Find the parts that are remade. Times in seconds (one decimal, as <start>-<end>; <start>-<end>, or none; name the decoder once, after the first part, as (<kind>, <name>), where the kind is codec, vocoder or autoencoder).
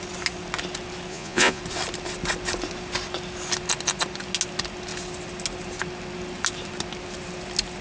1.1-1.6 (vocoder, Vocos)